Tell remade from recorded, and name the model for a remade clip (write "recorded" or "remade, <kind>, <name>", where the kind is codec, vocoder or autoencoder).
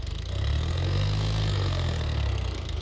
remade, codec, SNAC